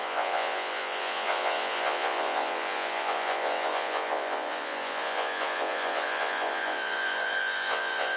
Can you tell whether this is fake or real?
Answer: fake